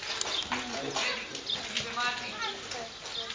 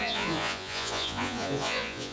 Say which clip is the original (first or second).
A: first